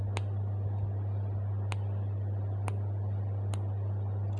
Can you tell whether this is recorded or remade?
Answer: recorded